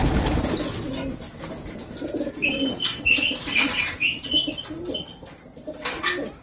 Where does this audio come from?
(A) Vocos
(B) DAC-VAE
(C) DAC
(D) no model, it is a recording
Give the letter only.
D